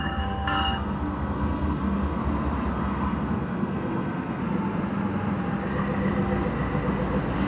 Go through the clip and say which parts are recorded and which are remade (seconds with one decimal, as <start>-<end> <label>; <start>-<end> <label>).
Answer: 0.0-2.2 remade; 2.2-2.7 recorded; 2.7-4.4 remade; 4.4-7.5 recorded